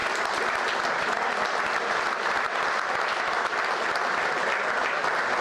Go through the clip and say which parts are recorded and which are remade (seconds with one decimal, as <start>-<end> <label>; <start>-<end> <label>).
0.0-5.4 recorded